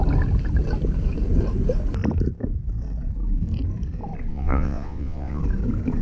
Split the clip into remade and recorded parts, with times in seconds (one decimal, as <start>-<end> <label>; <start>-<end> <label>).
0.0-4.3 recorded; 4.3-5.4 remade; 5.4-6.0 recorded